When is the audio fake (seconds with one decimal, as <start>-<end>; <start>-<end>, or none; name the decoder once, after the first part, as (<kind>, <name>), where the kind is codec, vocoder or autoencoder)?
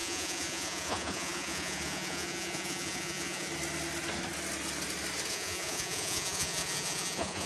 0.0-3.5 (vocoder, Vocos); 5.3-7.5